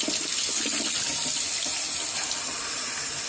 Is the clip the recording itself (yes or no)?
yes